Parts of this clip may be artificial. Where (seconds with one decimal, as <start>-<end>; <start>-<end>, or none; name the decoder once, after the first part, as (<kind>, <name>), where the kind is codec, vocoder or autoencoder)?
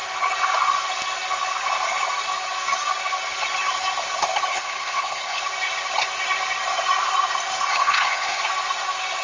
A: 4.5-5.4 (codec, HILCodec); 7.7-8.4